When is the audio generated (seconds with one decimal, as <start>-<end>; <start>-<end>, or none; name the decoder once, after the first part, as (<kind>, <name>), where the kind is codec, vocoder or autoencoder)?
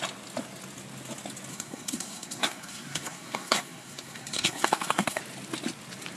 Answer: 1.5-5.2 (codec, SNAC)